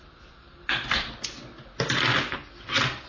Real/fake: real